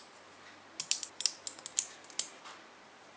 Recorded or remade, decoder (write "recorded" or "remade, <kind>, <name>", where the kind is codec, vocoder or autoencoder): recorded